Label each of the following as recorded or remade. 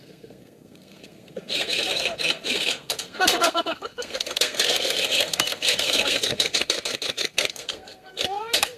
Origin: remade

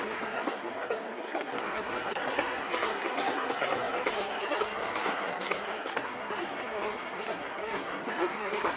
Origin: remade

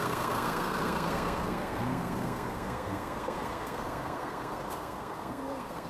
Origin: remade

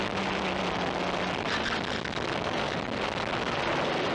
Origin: recorded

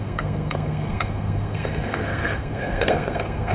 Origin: remade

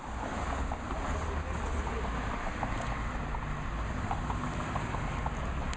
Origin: recorded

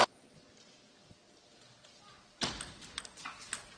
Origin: recorded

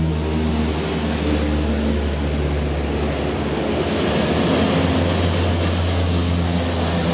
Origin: recorded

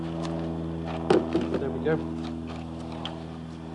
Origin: recorded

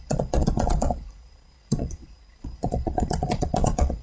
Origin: remade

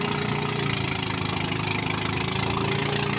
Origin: recorded